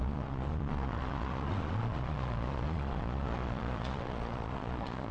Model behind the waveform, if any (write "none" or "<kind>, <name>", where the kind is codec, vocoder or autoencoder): vocoder, Vocos